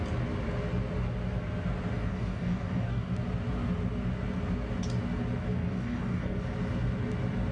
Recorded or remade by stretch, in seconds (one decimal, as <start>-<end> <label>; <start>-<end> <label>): 0.0-2.1 recorded; 2.1-3.1 remade; 3.1-5.5 recorded; 5.5-6.4 remade; 6.4-7.5 recorded